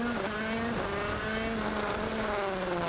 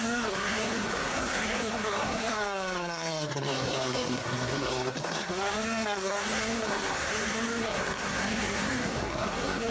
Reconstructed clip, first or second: second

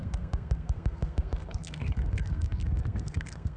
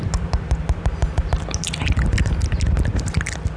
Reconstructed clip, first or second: first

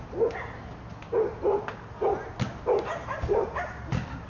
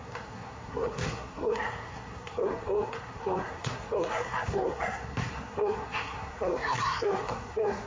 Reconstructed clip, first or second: second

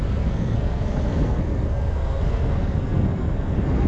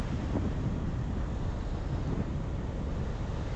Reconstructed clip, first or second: first